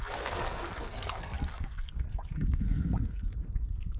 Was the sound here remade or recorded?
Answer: remade